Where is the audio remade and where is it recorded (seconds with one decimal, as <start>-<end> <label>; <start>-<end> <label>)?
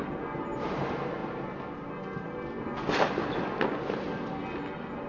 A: 0.0-5.1 recorded